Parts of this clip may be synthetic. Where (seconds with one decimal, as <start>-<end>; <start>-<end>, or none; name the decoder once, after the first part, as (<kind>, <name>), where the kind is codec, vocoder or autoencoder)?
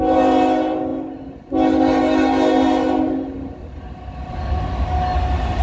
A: none